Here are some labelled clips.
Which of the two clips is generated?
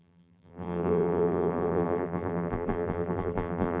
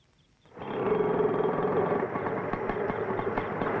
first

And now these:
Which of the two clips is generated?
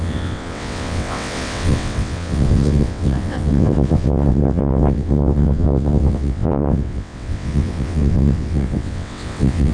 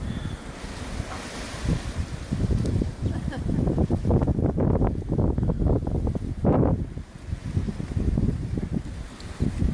first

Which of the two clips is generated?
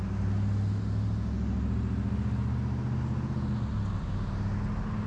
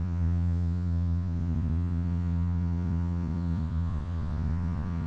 second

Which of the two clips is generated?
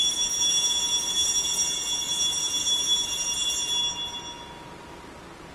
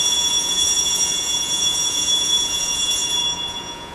second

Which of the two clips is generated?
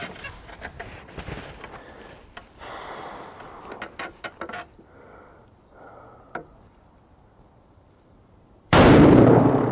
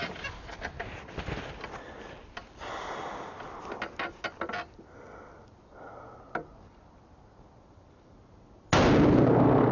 first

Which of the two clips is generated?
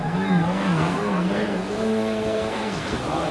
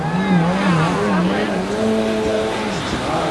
first